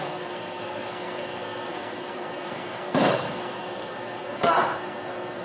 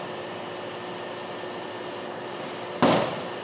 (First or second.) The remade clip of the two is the first